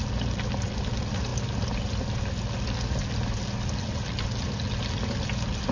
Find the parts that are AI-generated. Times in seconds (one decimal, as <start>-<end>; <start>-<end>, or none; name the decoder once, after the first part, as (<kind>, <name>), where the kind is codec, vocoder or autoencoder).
none